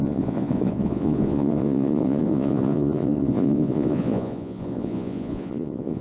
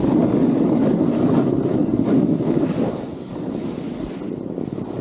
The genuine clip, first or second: second